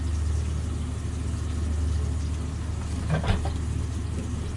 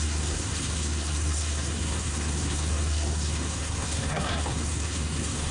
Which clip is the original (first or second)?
first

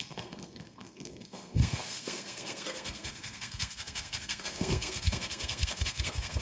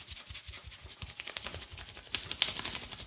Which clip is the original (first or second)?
second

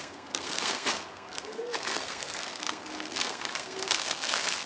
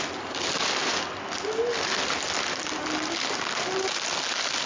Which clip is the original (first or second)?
second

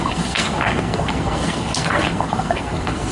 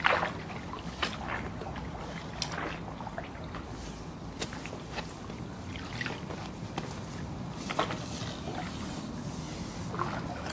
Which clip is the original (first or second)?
second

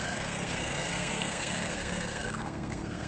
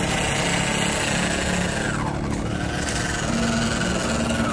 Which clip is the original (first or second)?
second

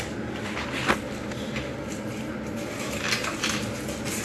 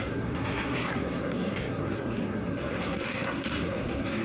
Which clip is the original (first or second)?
first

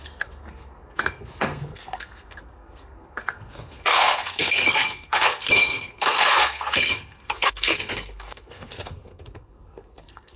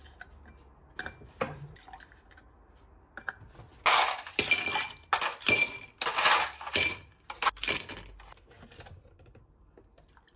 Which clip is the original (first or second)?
second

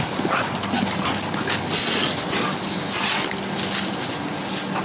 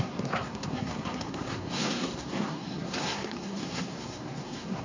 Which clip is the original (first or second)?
first